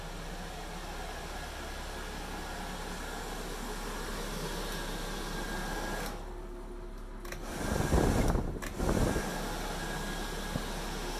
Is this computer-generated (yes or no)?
no